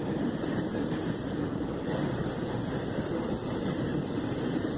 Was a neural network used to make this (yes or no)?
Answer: yes